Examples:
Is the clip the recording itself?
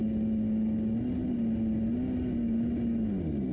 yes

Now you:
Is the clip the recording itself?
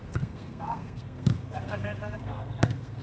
no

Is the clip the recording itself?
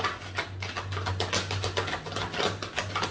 yes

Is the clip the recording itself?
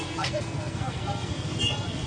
no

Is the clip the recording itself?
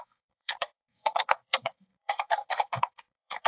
no